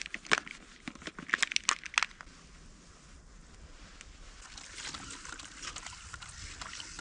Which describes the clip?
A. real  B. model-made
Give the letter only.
A